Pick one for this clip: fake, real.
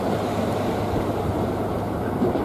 fake